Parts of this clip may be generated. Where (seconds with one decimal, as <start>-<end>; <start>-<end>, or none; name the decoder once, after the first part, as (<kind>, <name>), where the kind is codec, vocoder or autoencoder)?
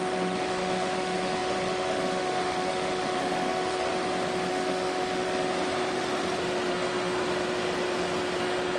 0.0-3.9 (autoencoder, DAC-VAE); 4.5-5.5; 6.7-7.2; 8.4-8.8